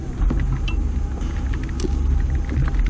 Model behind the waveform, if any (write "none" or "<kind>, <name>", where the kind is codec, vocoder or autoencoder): none